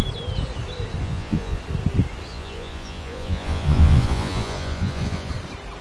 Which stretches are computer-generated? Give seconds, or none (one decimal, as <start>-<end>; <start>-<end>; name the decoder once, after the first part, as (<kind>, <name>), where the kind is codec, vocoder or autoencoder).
1.0-1.6 (vocoder, Vocos); 2.3-5.3